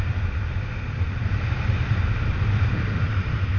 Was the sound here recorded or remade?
recorded